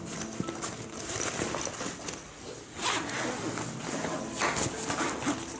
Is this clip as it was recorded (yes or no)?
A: yes